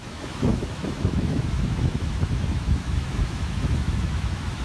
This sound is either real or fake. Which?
fake